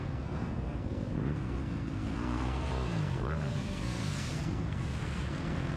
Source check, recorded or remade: remade